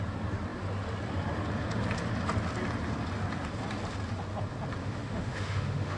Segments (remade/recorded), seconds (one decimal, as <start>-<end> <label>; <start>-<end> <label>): 0.0-4.8 recorded; 4.8-6.0 remade

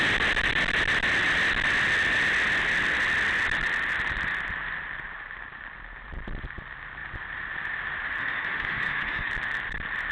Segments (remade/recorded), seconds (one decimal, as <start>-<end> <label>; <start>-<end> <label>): 0.0-8.2 recorded; 8.2-9.3 remade; 9.3-10.1 recorded

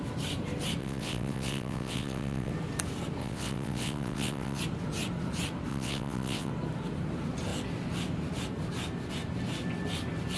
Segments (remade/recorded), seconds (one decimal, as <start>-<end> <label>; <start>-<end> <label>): 0.0-0.8 recorded; 0.8-2.5 remade; 2.5-3.2 recorded; 3.2-4.6 remade; 4.6-5.7 recorded; 5.7-6.5 remade; 6.5-10.4 recorded

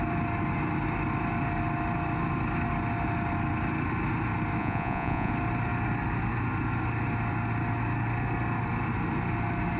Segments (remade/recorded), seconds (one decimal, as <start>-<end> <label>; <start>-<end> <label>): 0.0-4.6 recorded; 4.6-5.3 remade; 5.3-9.8 recorded

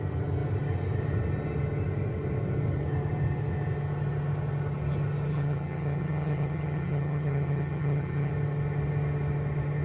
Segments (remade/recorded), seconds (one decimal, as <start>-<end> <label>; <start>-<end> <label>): 0.0-5.3 recorded; 5.3-8.3 remade; 8.3-9.8 recorded

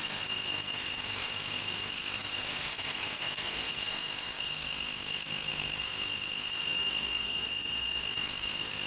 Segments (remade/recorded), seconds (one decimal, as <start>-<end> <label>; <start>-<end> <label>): 0.0-8.9 remade